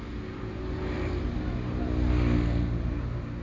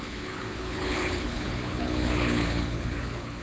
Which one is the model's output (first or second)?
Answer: second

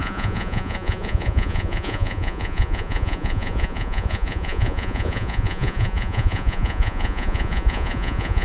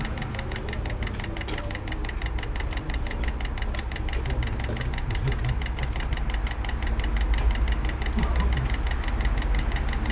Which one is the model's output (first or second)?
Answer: first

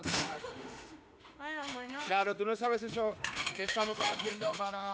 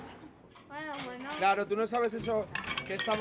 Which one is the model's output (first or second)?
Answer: first